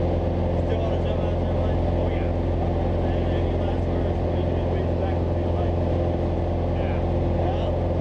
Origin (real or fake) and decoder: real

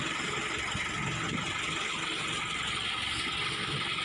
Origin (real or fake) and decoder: real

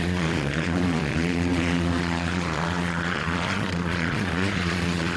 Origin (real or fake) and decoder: fake, vocoder, Vocos